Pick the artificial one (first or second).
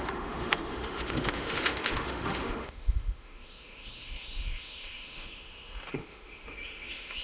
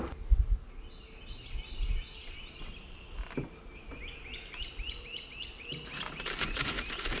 first